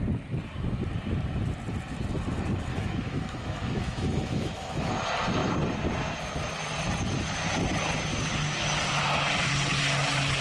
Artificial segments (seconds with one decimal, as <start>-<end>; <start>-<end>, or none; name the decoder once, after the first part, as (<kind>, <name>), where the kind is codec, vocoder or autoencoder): 2.7-4.9 (autoencoder, DAC-VAE)